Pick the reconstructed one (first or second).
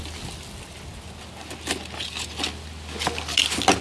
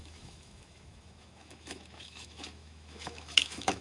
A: second